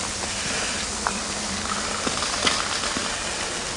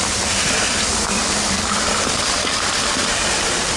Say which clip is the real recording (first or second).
first